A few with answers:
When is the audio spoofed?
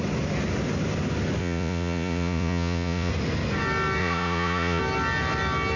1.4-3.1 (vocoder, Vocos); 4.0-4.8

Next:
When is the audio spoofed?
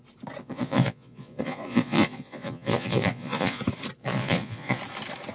0.4-3.6 (vocoder, Vocos); 4.0-4.8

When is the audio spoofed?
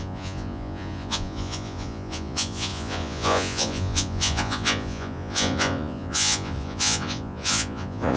0.0-8.2 (vocoder, Vocos)